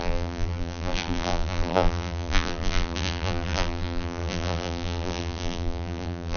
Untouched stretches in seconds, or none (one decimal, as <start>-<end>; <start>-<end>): none